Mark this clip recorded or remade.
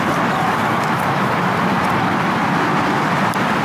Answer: recorded